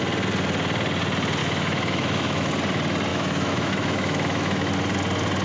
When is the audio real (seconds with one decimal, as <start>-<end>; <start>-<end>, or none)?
0.0-1.4; 2.5-3.1; 4.7-5.4